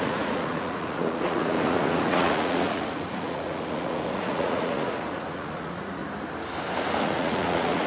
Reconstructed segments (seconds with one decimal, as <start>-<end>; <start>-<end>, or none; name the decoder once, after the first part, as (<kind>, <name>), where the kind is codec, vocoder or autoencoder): 0.0-6.0 (vocoder, Vocos); 7.0-7.9